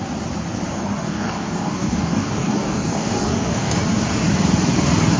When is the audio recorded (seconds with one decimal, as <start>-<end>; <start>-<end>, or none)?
0.0-0.7; 3.8-5.2